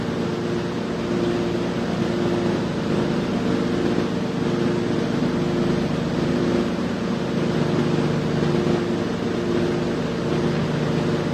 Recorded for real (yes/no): yes